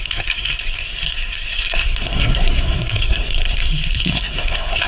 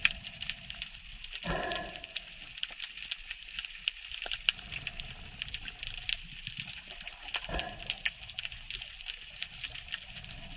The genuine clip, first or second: second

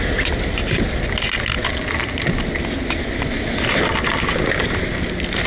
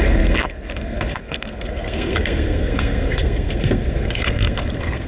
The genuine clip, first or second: first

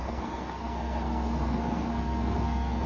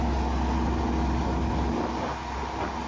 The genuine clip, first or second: second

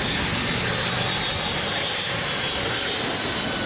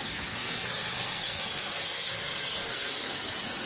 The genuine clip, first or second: first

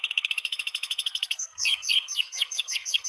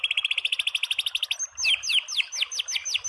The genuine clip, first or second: second